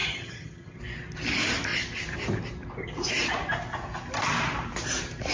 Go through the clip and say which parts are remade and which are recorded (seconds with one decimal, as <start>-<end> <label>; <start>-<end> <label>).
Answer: 0.0-0.8 remade; 0.8-5.3 recorded